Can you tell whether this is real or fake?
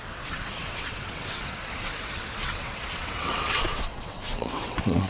fake